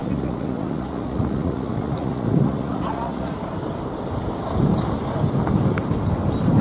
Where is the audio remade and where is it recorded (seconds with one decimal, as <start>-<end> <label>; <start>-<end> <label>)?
0.0-3.4 remade; 3.4-6.6 recorded